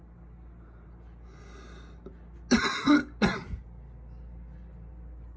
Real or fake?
real